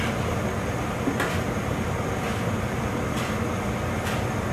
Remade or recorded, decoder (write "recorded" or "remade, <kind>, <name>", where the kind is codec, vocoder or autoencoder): recorded